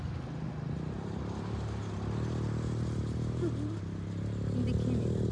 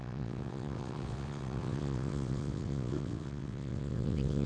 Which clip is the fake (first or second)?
second